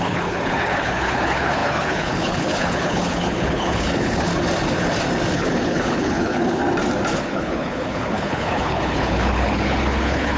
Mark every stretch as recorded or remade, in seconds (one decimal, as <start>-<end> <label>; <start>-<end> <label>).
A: 0.0-4.3 remade; 4.3-5.3 recorded; 5.3-6.6 remade; 6.6-7.2 recorded; 7.2-10.4 remade

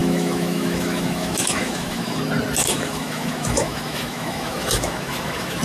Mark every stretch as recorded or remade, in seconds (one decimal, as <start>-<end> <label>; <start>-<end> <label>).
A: 0.0-2.2 remade; 2.2-2.6 recorded; 2.6-5.6 remade